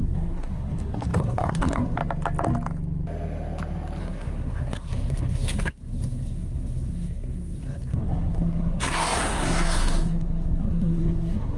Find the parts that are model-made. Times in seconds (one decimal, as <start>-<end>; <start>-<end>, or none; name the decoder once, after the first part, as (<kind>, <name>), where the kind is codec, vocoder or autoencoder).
0.0-2.0 (codec, SNAC); 4.0-11.6